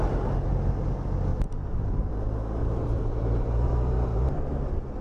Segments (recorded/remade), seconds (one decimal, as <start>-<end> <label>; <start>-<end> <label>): 0.0-1.3 recorded; 1.3-2.1 remade; 2.1-2.6 recorded; 2.6-4.5 remade; 4.5-5.0 recorded